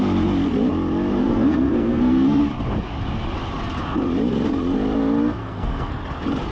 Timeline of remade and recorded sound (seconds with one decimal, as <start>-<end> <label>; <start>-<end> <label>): 0.0-1.2 recorded; 1.2-2.4 remade; 2.4-5.4 recorded; 5.4-6.0 remade; 6.0-6.5 recorded